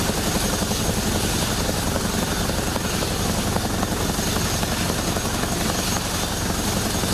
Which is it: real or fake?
real